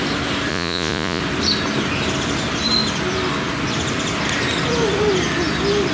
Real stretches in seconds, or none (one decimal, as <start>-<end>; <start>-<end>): 0.0-0.5; 1.2-5.9